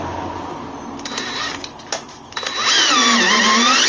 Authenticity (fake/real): real